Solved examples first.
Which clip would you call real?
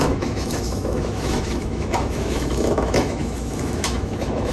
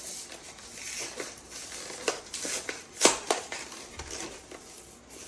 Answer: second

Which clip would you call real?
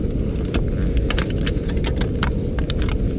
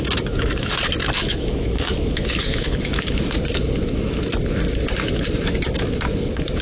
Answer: first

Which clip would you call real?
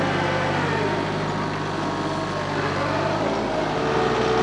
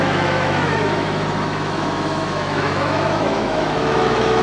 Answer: first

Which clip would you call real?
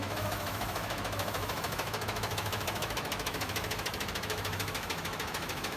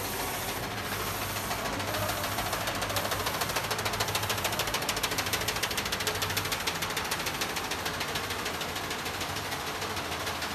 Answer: second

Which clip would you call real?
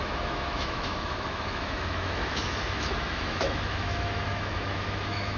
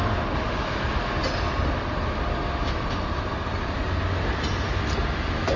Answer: second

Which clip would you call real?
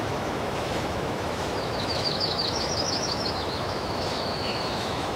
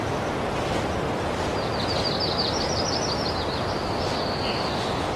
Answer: second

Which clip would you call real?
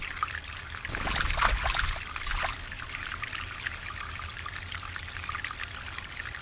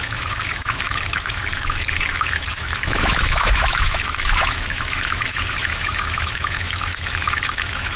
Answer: first